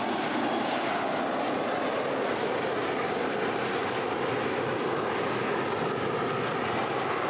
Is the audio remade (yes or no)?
no